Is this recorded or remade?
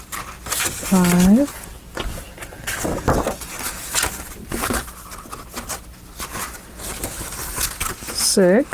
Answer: recorded